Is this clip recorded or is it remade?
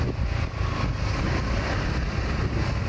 recorded